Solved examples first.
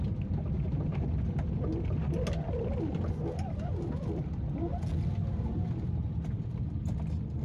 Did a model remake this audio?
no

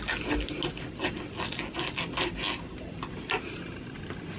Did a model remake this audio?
no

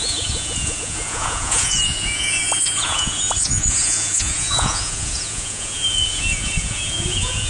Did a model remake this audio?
yes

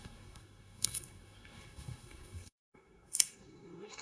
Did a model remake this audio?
yes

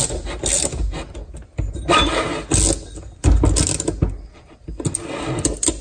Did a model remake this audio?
no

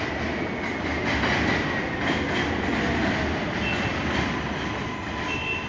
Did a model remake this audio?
no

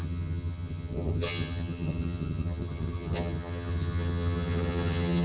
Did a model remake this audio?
yes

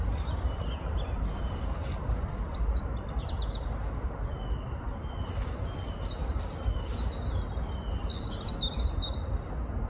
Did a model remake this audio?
no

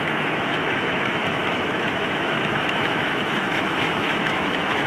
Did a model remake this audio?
yes